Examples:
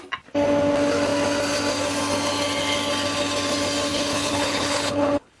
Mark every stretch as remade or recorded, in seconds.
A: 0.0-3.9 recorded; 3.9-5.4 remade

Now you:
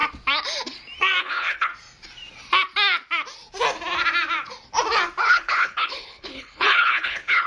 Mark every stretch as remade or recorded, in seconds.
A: 0.0-1.2 recorded; 1.2-1.7 remade; 1.7-5.2 recorded; 5.2-7.5 remade

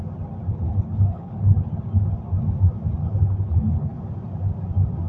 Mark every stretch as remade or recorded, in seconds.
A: 0.0-0.5 recorded; 0.5-1.7 remade; 1.7-3.0 recorded; 3.0-4.0 remade; 4.0-5.1 recorded

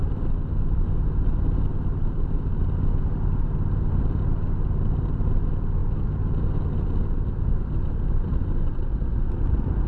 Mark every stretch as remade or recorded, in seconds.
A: 0.0-9.9 recorded

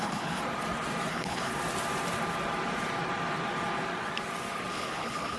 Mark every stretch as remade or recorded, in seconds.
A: 0.0-0.4 remade; 0.4-1.1 recorded; 1.1-1.5 remade; 1.5-4.7 recorded; 4.7-5.4 remade